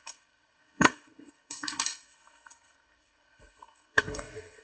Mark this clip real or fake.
fake